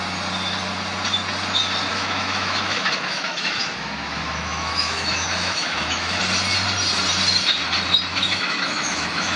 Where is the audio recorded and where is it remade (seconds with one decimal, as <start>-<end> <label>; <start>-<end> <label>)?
0.0-1.9 recorded; 1.9-6.2 remade; 6.2-8.1 recorded; 8.1-9.4 remade

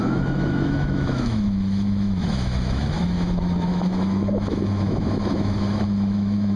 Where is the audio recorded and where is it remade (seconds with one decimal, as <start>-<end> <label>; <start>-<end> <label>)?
0.0-6.6 remade